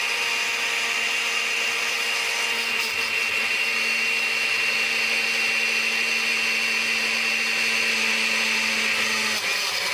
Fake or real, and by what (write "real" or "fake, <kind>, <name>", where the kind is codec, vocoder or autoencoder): real